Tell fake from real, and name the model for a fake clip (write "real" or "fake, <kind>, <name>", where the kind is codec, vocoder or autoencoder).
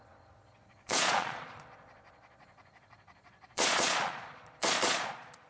fake, vocoder, Vocos